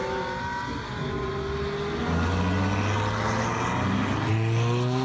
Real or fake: real